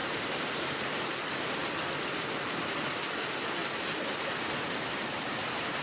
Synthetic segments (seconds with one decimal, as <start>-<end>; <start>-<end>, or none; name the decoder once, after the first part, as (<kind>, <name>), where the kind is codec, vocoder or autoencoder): 0.0-1.6 (vocoder, BigVGAN v2); 2.4-3.6; 4.1-5.8